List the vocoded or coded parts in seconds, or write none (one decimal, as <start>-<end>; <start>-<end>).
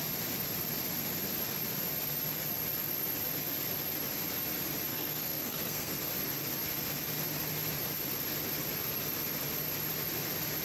4.9-6.0